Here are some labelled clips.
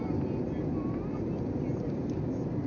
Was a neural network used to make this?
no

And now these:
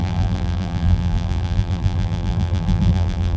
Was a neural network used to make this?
yes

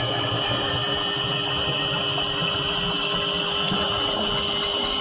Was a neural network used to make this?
no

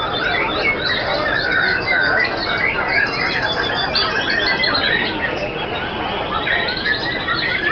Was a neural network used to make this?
no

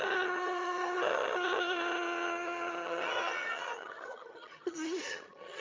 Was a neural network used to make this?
yes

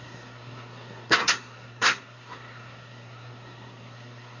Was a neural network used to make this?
yes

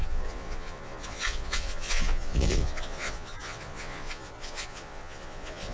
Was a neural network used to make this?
yes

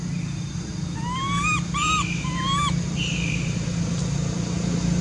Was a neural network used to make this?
no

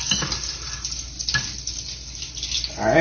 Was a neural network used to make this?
no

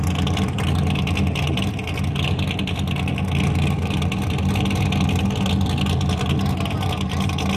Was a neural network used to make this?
no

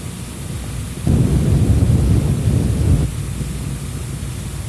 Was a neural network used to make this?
no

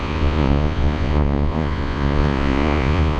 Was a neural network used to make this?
yes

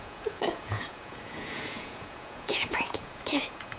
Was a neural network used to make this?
yes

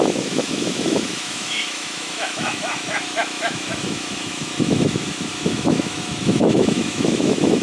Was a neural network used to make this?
yes